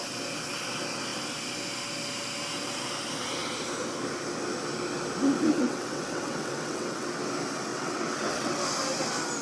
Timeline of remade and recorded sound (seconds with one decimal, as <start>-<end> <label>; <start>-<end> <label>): 0.0-5.5 recorded; 5.5-7.1 remade; 7.1-7.7 recorded; 7.7-8.6 remade; 8.6-9.4 recorded